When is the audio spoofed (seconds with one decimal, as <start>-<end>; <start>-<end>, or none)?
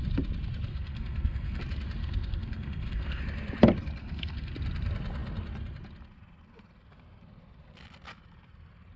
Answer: 0.7-1.6; 2.0-3.2; 4.0-4.5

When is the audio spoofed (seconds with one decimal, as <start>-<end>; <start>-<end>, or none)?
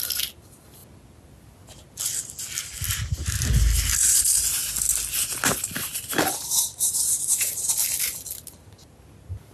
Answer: 5.9-7.7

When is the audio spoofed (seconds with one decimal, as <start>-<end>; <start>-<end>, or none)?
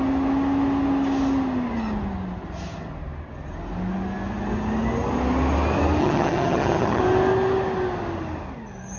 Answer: 6.0-7.0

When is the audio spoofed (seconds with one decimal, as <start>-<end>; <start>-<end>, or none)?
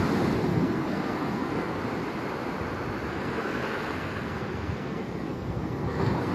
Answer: 0.5-1.8; 3.1-6.3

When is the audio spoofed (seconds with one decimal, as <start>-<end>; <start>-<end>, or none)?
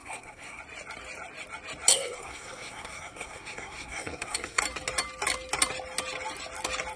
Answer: 0.0-0.6; 1.9-4.6